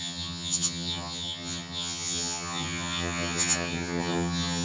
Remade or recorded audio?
remade